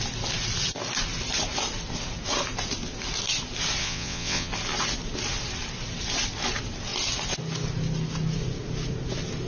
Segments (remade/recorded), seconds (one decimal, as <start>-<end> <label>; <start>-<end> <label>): 0.0-3.8 recorded; 3.8-4.5 remade; 4.5-9.5 recorded